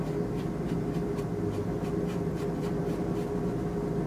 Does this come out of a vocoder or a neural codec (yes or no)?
no